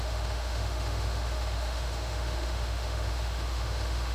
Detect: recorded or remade remade